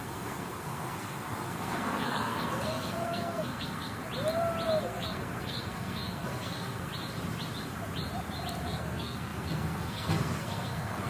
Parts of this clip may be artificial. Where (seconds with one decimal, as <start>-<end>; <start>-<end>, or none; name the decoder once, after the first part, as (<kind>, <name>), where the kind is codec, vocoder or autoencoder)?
0.0-4.0 (codec, SNAC); 4.8-6.9; 8.6-11.1